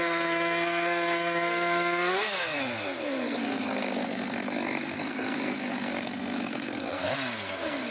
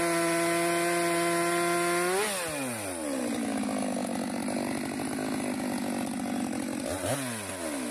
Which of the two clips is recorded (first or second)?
second